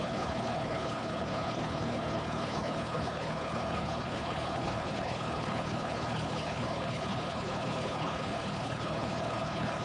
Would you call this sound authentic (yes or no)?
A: no